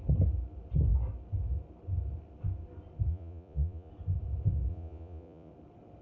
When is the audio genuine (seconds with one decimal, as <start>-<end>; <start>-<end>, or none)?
0.0-3.1; 3.9-4.7; 5.5-6.0